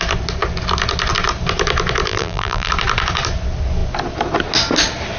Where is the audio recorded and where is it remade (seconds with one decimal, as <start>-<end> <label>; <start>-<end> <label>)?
0.0-2.1 recorded; 2.1-2.7 remade; 2.7-5.2 recorded